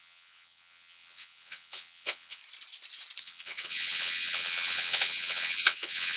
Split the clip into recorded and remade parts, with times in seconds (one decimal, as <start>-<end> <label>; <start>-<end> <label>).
0.0-2.4 remade; 2.4-3.2 recorded; 3.2-6.2 remade